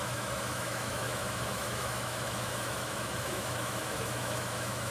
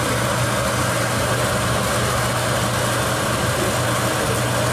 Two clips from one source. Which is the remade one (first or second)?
first